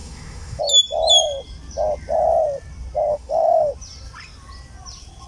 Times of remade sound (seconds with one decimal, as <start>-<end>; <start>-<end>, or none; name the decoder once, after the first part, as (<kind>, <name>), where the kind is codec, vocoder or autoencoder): 0.0-0.6 (autoencoder, DAC-VAE); 3.1-3.7